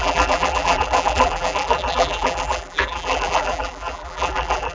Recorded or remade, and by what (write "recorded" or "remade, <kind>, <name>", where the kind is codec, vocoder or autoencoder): remade, vocoder, BigVGAN v2